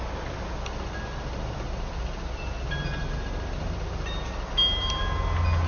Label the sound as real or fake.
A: real